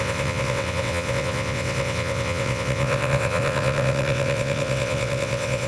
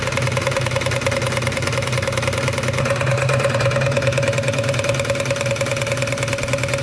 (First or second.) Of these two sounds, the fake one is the first